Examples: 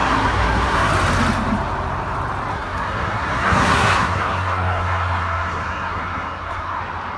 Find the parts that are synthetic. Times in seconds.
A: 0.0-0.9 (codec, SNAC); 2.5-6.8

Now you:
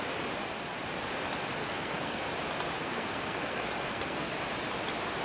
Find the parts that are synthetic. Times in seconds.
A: 1.6-2.2 (codec, SNAC); 2.8-4.3

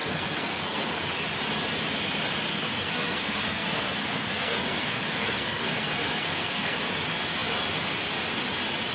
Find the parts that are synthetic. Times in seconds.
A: 0.0-1.0 (codec, SNAC); 2.5-6.8

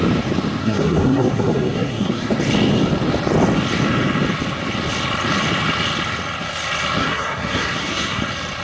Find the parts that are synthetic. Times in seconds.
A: 0.6-2.3 (codec, SNAC); 7.0-8.2